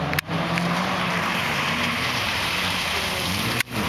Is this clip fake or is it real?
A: fake